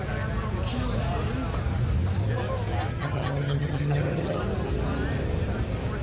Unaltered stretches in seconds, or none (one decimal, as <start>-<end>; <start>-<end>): 0.0-2.9; 4.4-6.0